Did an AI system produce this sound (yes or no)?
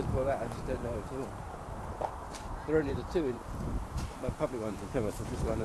yes